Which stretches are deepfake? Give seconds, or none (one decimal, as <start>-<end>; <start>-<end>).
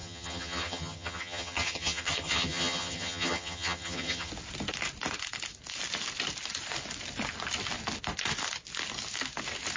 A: 0.0-4.3